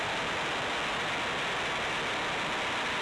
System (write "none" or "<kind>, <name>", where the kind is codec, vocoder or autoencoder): none